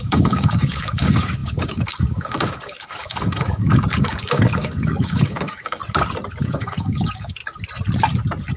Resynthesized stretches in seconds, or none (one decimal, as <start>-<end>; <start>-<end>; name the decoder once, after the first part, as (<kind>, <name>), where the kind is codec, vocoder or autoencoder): 0.0-5.8 (codec, DAC); 6.4-7.4